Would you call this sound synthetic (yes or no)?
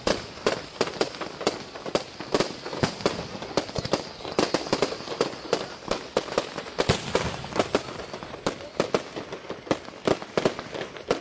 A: no